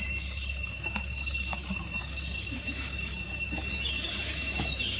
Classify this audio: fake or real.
fake